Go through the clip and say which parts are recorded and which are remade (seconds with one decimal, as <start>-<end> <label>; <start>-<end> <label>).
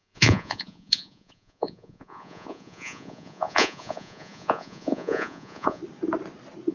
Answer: 0.0-5.8 remade; 5.8-6.7 recorded